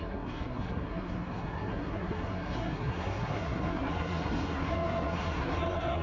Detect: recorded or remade remade